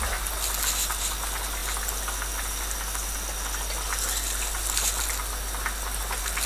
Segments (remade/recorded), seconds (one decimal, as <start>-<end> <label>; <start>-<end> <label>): 0.0-6.5 recorded